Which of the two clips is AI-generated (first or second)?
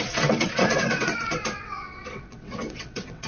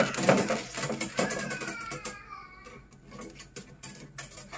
first